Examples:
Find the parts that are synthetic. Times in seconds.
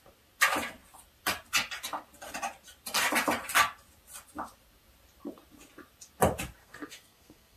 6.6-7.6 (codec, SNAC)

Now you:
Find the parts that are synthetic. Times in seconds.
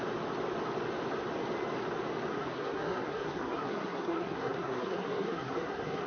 2.3-6.1 (codec, SNAC)